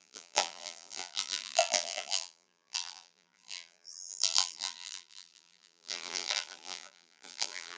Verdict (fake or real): fake